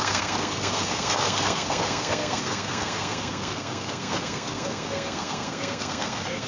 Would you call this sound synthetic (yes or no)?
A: yes